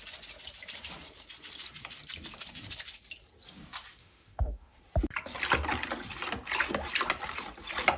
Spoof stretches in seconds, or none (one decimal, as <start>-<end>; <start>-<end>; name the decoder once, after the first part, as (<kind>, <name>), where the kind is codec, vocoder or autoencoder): 4.0-4.8 (autoencoder, DAC-VAE)